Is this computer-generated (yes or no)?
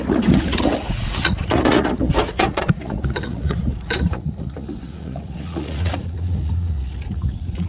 yes